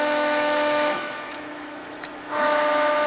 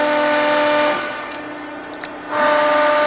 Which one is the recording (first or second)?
second